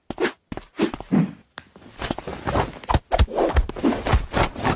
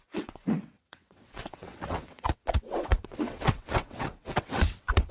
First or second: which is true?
first